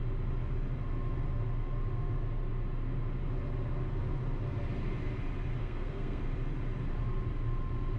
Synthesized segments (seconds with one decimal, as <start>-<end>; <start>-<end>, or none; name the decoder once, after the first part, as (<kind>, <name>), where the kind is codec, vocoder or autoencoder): 5.6-6.2 (codec, SNAC)